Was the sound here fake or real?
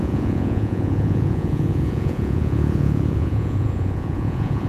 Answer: fake